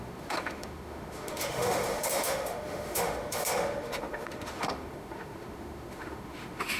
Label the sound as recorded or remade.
remade